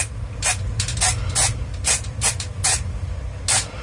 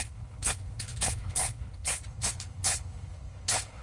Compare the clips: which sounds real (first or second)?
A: first